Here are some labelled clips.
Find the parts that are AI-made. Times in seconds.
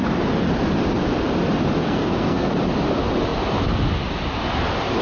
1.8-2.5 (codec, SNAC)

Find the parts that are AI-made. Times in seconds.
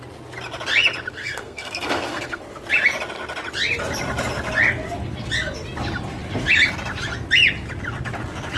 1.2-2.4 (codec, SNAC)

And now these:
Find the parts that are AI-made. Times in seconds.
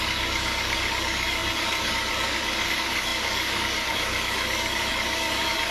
0.0-5.7 (codec, DAC)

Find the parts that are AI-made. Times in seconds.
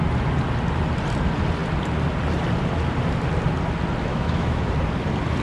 4.1-4.7 (autoencoder, DAC-VAE)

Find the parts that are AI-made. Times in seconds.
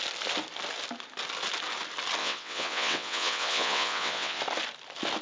2.2-4.4 (vocoder, WaveNeXt)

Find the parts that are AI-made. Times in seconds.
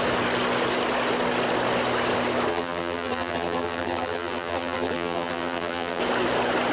2.5-6.0 (vocoder, BigVGAN v2)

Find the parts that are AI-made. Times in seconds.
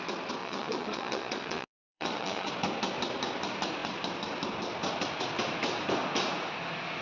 0.4-2.5 (vocoder, Vocos)